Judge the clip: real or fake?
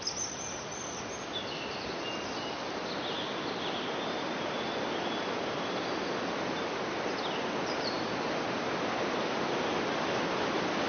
real